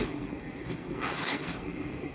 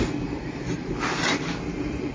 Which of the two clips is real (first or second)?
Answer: second